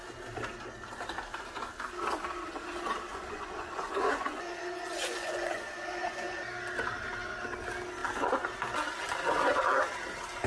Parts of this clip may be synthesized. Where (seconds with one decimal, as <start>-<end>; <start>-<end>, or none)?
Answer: 3.1-6.4